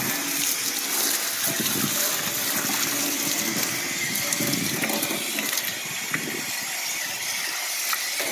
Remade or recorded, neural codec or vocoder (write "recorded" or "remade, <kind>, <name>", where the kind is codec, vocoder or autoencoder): recorded